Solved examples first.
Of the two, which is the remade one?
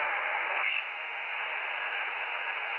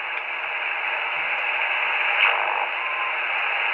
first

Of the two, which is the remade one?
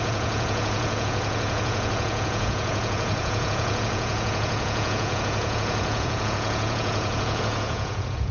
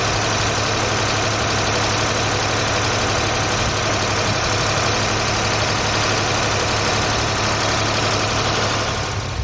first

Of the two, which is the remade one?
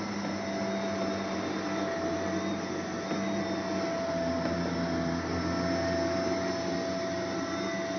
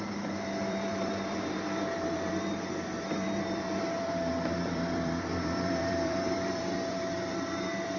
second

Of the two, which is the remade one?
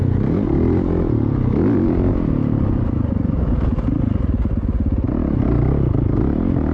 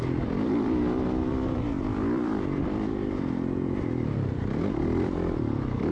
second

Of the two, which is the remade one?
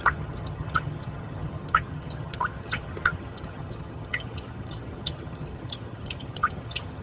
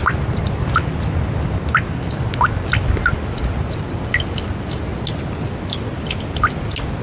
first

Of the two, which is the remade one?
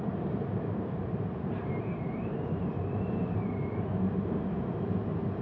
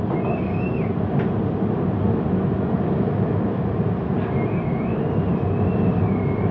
first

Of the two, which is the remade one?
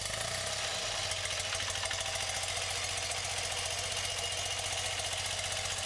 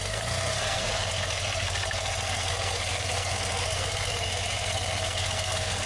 second